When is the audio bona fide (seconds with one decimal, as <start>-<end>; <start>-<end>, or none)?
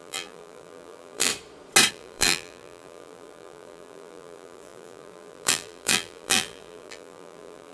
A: 1.3-1.9